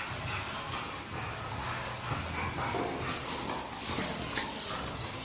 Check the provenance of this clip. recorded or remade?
recorded